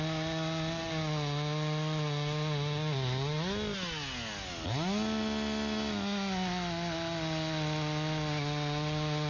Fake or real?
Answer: real